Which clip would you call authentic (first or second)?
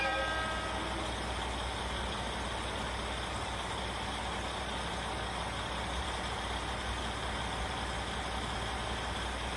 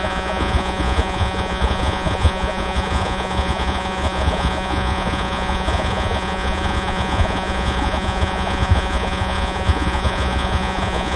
first